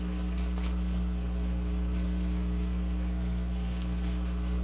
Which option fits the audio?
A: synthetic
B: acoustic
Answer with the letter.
A